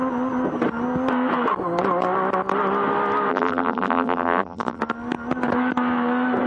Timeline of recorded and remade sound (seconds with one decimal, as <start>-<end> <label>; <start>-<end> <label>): 0.0-3.3 recorded; 3.3-4.8 remade; 4.8-6.5 recorded